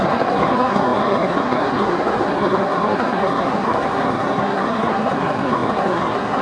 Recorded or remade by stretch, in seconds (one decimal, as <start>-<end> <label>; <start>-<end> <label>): 0.0-6.4 remade